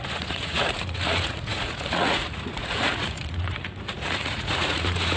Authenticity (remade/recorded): remade